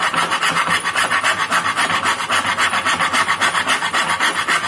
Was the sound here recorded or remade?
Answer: recorded